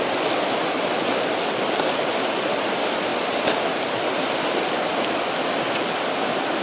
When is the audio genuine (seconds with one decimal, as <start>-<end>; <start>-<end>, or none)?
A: 0.0-6.6